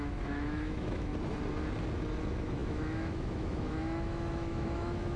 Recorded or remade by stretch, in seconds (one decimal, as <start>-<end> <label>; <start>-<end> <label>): 0.0-1.1 remade; 1.1-2.2 recorded; 2.2-5.2 remade